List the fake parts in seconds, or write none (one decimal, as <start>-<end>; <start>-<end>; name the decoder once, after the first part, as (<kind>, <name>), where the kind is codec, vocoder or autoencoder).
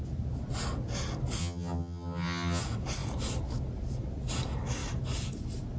1.4-2.6 (vocoder, HiFi-GAN)